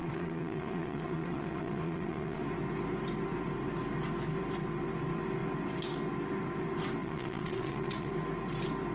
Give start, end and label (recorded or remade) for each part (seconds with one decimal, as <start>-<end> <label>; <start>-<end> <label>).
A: 0.0-2.4 remade; 2.4-7.0 recorded; 7.0-8.1 remade; 8.1-8.9 recorded